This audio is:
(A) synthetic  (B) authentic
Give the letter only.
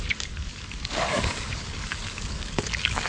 A